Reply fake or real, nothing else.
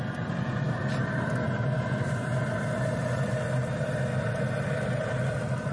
real